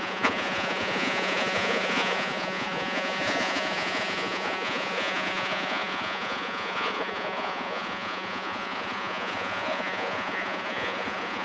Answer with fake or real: fake